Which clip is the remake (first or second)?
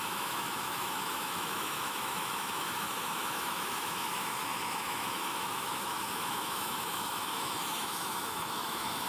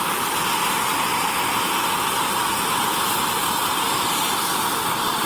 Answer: first